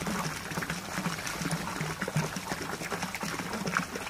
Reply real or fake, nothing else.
real